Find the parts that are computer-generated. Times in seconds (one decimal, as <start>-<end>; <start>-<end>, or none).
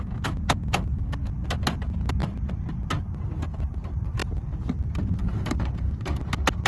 4.2-6.3